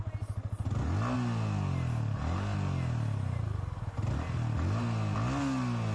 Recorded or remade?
recorded